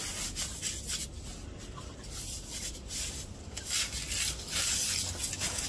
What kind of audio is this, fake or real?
real